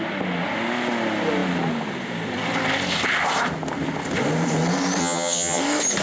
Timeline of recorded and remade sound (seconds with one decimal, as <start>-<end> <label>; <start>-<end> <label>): 0.0-5.0 recorded; 5.0-5.6 remade; 5.6-6.0 recorded